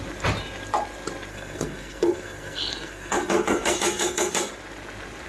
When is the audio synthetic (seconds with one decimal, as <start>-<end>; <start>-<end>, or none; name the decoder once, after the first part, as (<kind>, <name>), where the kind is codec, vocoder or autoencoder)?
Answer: 1.3-4.5 (codec, SNAC)